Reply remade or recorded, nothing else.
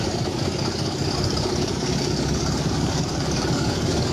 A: remade